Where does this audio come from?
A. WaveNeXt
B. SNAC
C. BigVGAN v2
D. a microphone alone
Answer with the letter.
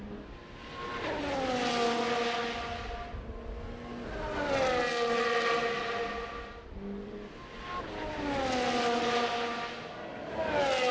D